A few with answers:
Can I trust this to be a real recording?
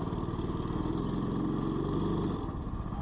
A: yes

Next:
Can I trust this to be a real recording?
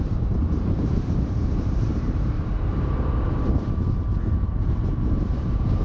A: no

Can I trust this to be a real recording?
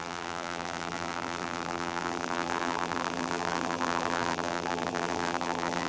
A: no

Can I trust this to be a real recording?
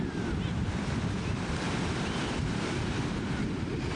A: no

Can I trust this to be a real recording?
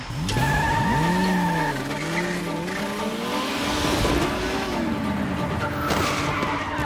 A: yes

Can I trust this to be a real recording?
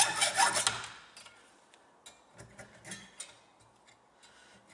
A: yes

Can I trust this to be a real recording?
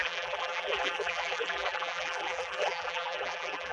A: no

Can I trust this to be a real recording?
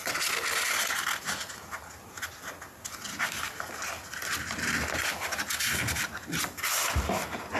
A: yes